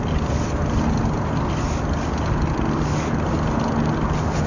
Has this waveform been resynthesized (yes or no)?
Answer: no